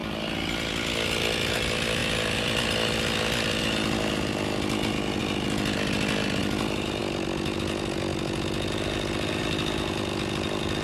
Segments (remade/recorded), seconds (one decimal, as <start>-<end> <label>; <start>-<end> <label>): 0.0-10.8 recorded